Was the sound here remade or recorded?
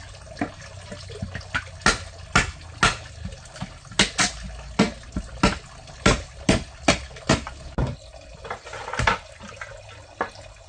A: recorded